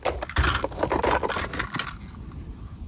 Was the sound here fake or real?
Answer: real